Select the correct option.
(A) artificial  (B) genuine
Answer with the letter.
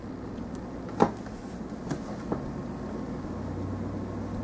B